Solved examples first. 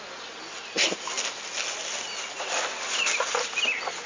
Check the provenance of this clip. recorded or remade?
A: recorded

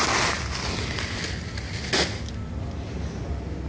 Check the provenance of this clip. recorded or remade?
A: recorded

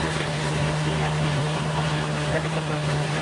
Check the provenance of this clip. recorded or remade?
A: remade